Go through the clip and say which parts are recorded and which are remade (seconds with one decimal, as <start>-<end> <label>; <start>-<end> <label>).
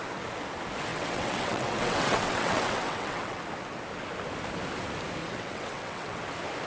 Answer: 0.0-0.9 recorded; 0.9-3.4 remade; 3.4-5.2 recorded; 5.2-6.2 remade; 6.2-6.7 recorded